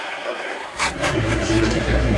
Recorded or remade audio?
remade